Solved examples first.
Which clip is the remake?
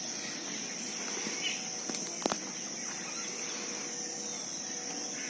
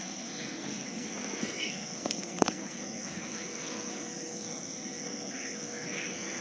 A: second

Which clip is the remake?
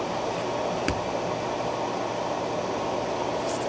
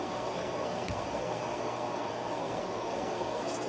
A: second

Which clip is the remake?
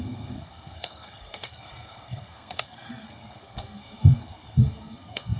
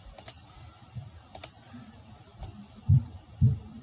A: first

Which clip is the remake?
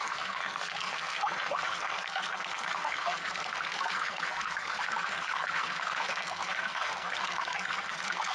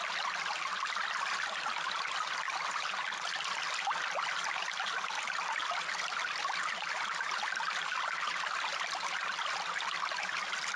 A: first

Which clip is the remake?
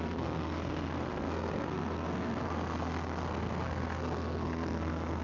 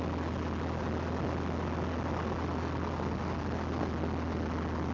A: first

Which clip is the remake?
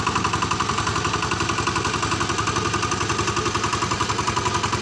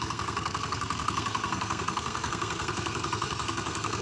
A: second